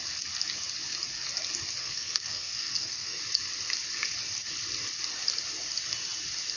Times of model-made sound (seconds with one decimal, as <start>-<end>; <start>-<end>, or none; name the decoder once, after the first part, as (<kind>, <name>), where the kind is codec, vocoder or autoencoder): 1.8-3.2 (codec, SNAC)